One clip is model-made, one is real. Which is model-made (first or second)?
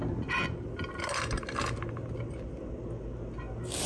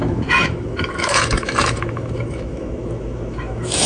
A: second